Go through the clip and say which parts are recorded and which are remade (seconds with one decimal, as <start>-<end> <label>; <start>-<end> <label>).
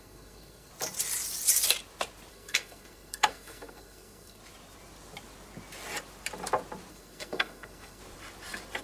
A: 0.0-0.7 remade; 0.7-2.3 recorded; 2.3-4.4 remade; 4.4-6.9 recorded; 6.9-8.0 remade; 8.0-8.8 recorded